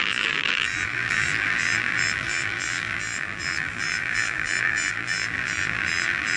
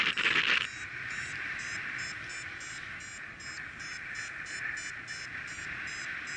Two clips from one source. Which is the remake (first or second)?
first